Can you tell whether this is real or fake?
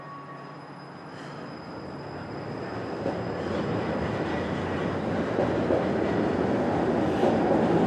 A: real